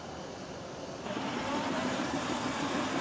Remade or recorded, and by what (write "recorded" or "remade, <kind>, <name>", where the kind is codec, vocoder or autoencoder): remade, vocoder, BigVGAN v2